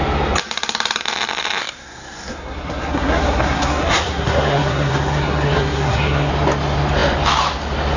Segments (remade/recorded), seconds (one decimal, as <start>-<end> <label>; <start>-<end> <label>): 0.0-1.6 recorded; 1.6-6.3 remade; 6.3-8.0 recorded